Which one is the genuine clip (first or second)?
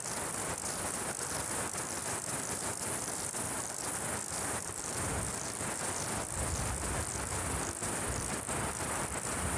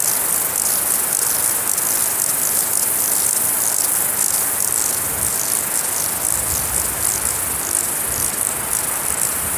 second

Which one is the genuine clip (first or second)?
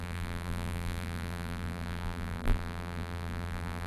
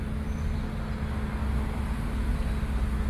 second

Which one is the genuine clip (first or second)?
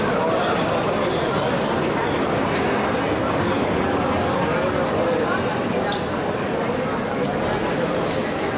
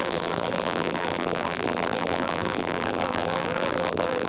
first